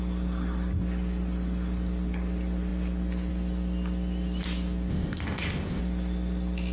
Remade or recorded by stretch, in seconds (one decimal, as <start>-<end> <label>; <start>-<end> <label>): 0.0-4.9 recorded; 4.9-5.8 remade; 5.8-6.7 recorded